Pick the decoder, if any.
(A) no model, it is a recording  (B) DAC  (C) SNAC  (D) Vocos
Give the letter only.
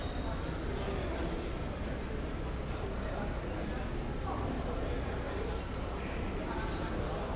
A